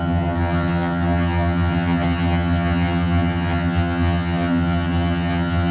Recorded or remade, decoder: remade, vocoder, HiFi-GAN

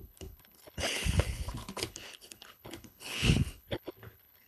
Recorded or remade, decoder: remade, codec, HILCodec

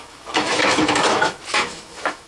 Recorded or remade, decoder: remade, autoencoder, DAC-VAE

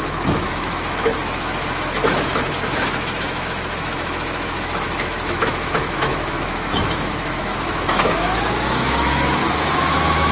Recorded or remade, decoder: remade, autoencoder, DAC-VAE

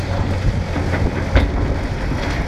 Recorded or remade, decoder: recorded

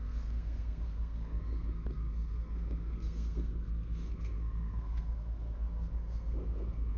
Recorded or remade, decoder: remade, codec, SNAC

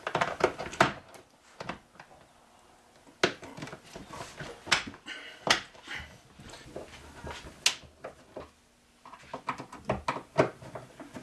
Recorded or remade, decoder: recorded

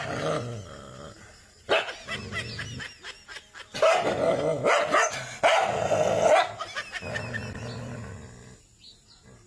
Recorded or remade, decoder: recorded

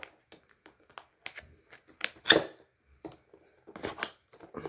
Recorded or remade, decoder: recorded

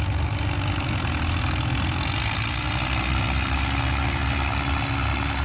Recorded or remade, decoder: recorded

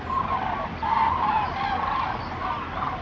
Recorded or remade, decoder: recorded